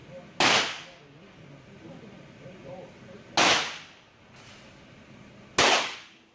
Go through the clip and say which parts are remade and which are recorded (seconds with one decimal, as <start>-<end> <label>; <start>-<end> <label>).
0.0-6.3 recorded